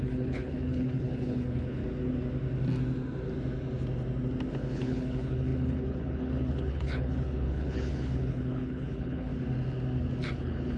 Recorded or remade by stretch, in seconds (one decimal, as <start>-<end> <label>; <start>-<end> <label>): 0.0-1.8 remade; 1.8-4.5 recorded; 4.5-9.3 remade; 9.3-10.4 recorded; 10.4-10.8 remade